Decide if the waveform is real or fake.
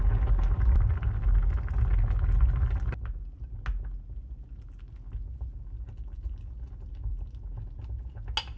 real